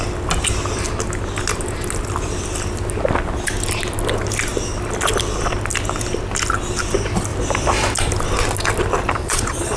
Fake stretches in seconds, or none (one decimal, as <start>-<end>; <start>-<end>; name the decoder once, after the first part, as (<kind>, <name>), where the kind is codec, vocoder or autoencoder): 9.2-9.8 (vocoder, Vocos)